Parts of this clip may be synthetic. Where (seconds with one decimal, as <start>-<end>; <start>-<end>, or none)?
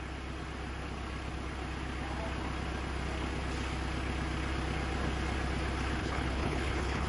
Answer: 6.0-7.1